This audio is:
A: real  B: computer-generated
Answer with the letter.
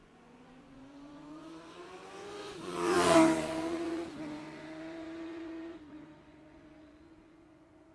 B